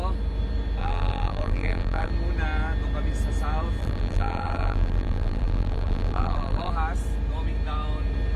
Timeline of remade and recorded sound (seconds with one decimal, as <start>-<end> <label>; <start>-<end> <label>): 0.0-0.8 recorded; 0.8-2.1 remade; 2.1-3.8 recorded; 3.8-6.7 remade; 6.7-8.4 recorded